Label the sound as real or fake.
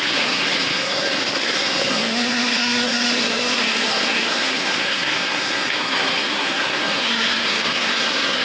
fake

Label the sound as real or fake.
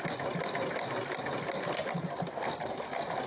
real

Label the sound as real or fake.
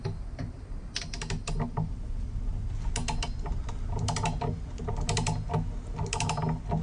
real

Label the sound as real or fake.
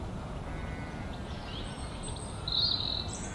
real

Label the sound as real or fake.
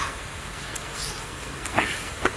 fake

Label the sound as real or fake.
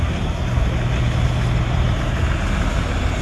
real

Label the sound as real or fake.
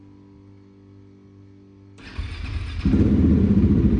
real